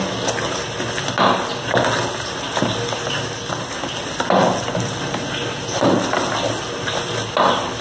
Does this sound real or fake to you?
real